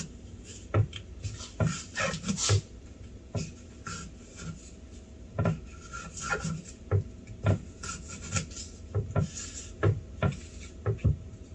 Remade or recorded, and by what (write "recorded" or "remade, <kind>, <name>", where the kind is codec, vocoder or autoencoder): recorded